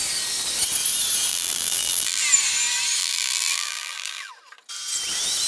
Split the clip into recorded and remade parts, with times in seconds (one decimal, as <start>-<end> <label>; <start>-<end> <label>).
0.0-1.3 recorded; 1.3-2.2 remade; 2.2-3.0 recorded; 3.0-4.3 remade; 4.3-5.5 recorded